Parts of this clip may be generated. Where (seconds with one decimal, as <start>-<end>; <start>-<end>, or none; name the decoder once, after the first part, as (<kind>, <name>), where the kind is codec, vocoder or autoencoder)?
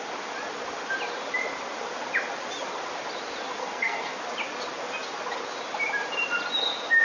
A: 3.6-4.2 (codec, SNAC)